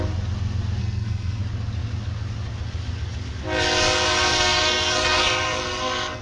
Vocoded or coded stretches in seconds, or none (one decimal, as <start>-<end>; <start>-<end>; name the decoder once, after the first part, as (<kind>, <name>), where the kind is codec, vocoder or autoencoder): 0.8-1.4 (codec, SNAC); 4.3-6.2